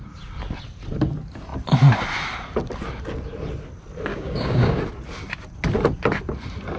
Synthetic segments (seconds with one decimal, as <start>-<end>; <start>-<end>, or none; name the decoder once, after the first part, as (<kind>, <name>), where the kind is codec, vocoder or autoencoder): 4.1-4.8 (codec, DAC)